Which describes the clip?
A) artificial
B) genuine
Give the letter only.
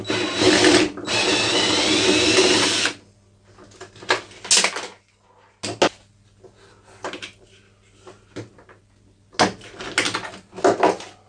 B